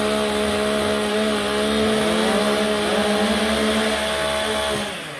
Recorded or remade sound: recorded